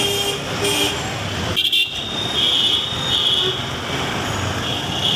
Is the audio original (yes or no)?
yes